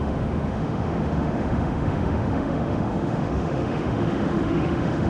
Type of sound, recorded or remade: remade